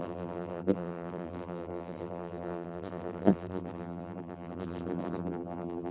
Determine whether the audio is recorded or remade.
remade